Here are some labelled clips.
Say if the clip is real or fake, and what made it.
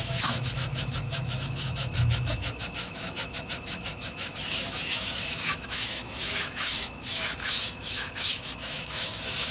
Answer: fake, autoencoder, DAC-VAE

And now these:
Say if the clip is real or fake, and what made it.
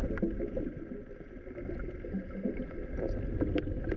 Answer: real